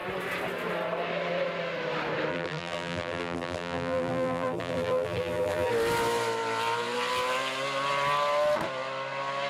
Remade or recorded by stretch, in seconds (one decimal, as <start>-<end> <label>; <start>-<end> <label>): 0.0-2.3 recorded; 2.3-5.7 remade; 5.7-9.5 recorded